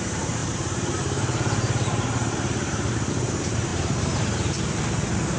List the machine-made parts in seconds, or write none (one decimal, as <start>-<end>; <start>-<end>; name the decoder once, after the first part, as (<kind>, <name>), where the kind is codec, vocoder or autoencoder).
0.0-5.4 (vocoder, BigVGAN v2)